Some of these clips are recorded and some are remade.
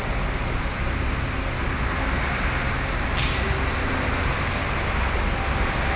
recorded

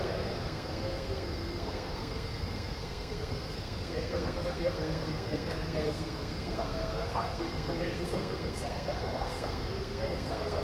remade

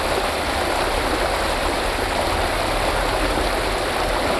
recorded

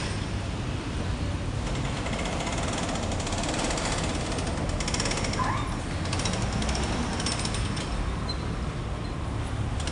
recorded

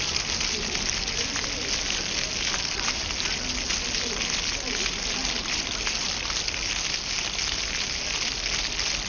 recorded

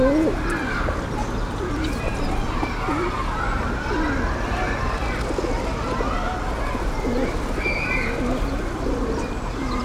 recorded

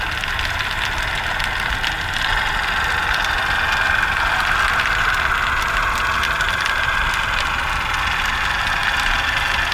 recorded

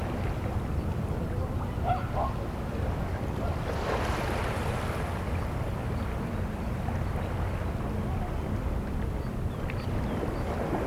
recorded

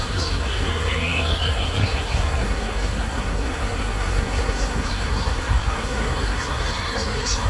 remade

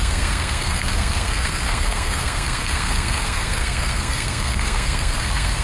remade